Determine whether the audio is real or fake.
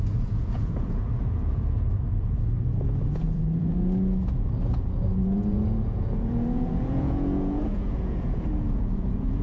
fake